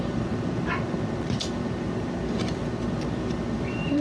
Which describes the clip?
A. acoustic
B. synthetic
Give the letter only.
B